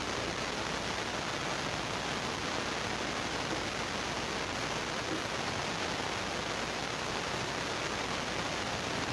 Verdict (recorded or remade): recorded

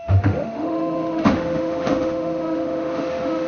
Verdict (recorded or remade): remade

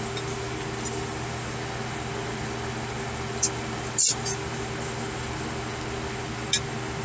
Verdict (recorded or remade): recorded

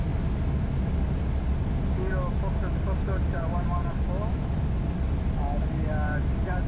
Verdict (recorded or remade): recorded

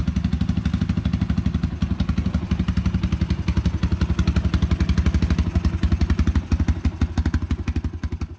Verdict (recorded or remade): recorded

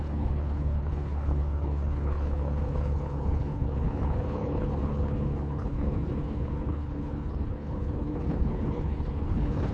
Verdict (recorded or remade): remade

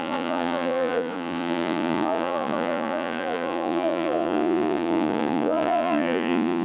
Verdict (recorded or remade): remade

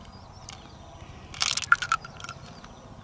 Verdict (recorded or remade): recorded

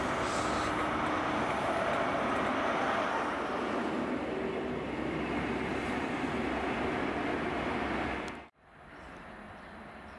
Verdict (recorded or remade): recorded